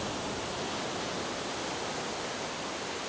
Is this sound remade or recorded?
recorded